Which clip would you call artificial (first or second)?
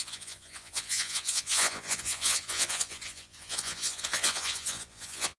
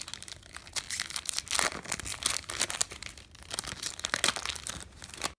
first